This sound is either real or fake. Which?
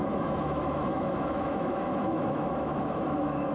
fake